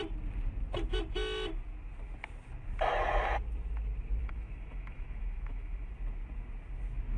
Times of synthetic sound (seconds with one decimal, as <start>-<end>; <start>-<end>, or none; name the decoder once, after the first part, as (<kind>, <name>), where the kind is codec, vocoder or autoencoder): 4.2-5.9 (autoencoder, DAC-VAE)